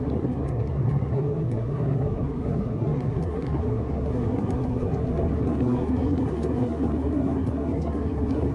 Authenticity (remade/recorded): remade